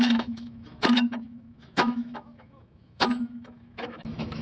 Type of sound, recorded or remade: remade